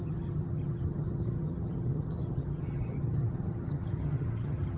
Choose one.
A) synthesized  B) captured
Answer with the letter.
A